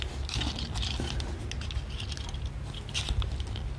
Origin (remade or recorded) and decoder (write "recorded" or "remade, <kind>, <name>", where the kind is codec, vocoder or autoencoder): recorded